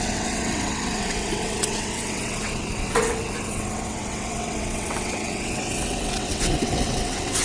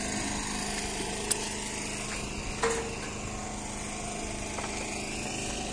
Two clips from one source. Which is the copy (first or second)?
first